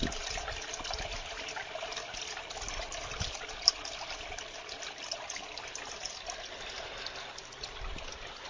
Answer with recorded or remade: recorded